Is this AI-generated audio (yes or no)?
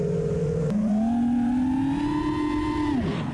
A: no